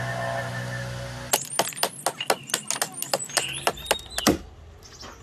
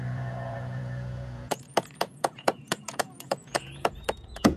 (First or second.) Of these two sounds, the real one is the first